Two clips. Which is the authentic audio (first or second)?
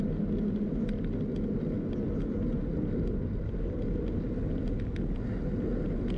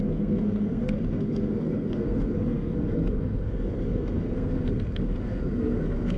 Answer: first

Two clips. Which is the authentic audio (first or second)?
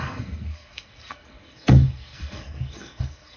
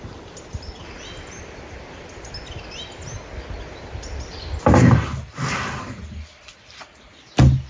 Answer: second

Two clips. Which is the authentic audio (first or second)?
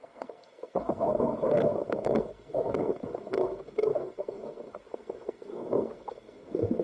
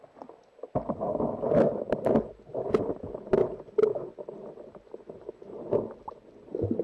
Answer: second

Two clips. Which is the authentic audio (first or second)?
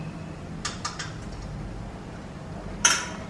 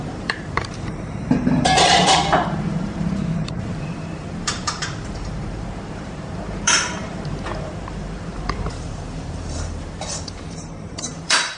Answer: first